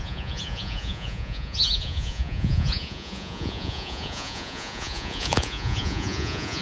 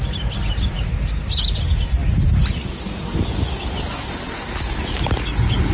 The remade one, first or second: first